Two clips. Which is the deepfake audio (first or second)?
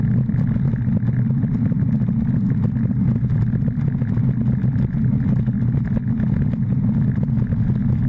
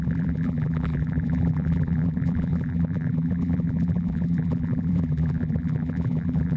second